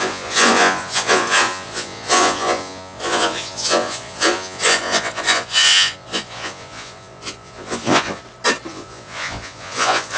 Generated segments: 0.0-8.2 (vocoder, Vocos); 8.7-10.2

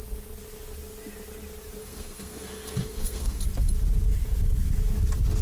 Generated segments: 1.8-3.4 (codec, SNAC)

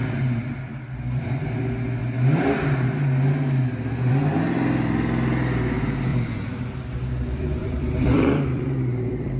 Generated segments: 6.1-9.4 (vocoder, BigVGAN v2)

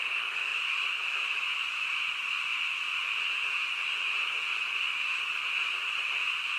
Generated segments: 0.5-2.4 (vocoder, BigVGAN v2); 4.6-6.1

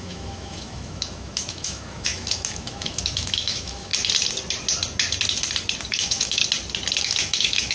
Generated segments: 0.0-3.9 (autoencoder, DAC-VAE); 5.9-6.4; 7.0-7.7

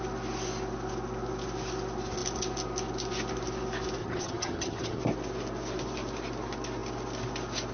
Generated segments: 4.0-5.0 (vocoder, HiFi-GAN)